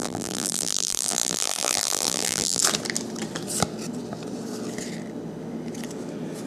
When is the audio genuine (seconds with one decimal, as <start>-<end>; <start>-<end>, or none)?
2.6-6.5